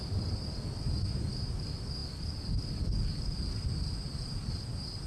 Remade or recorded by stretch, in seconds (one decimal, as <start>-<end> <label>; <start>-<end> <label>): 0.0-5.1 recorded